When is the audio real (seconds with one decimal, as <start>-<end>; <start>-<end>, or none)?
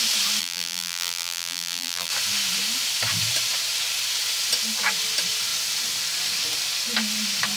0.0-0.4; 2.1-7.6